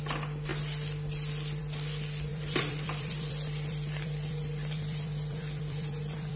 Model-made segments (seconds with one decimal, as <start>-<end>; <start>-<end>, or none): 2.3-6.4